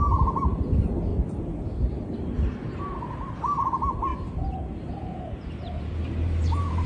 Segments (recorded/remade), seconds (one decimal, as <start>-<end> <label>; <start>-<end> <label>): 0.0-1.1 recorded; 1.1-2.8 remade; 2.8-4.1 recorded; 4.1-6.9 remade